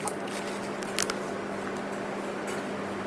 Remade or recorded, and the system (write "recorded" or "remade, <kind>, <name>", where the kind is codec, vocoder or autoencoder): recorded